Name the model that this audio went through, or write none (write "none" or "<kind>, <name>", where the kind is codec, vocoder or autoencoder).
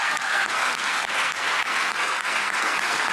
codec, SNAC